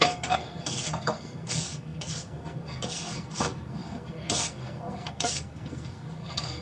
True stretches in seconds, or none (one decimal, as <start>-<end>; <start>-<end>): none